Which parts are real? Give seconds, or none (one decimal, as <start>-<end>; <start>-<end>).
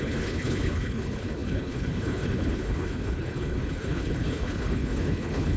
none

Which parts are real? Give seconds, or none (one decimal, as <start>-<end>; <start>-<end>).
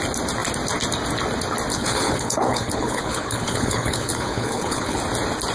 0.0-1.7; 5.0-5.5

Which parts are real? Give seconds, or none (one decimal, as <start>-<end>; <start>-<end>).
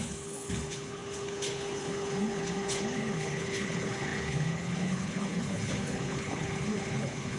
none